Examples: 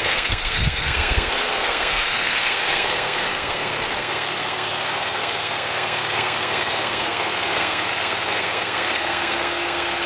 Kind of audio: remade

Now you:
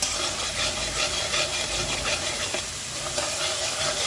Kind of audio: recorded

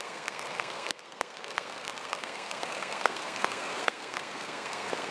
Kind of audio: remade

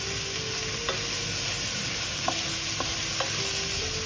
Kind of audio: recorded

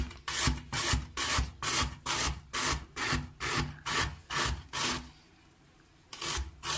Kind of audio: recorded